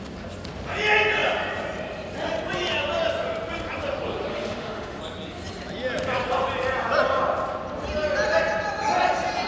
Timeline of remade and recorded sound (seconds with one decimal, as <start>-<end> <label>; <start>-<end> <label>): 0.0-4.3 recorded; 4.3-5.0 remade; 5.0-9.5 recorded

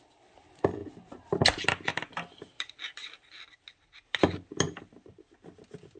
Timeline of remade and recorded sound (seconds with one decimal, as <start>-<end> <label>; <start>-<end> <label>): 0.0-6.0 recorded

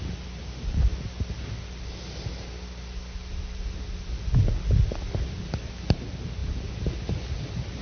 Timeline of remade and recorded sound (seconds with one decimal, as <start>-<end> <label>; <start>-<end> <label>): 0.0-7.8 recorded

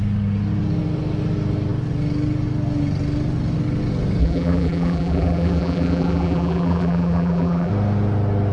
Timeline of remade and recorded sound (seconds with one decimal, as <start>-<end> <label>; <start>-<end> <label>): 0.0-4.2 recorded; 4.2-7.7 remade; 7.7-8.5 recorded

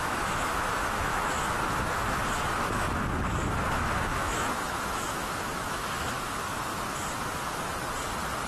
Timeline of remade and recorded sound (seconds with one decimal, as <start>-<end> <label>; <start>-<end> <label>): 0.0-6.7 remade; 6.7-8.5 recorded

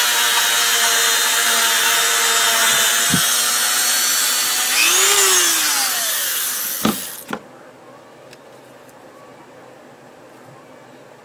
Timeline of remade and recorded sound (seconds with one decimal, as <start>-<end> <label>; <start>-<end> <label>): 0.0-11.2 recorded

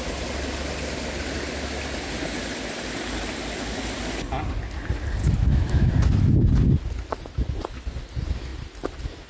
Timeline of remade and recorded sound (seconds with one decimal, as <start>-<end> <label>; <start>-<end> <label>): 0.0-5.2 recorded; 5.2-5.9 remade; 5.9-9.3 recorded

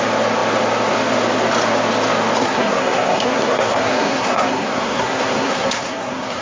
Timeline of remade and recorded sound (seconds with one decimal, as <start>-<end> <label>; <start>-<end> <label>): 0.0-2.4 recorded; 2.4-6.4 remade